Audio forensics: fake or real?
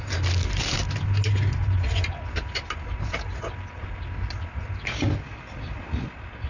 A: real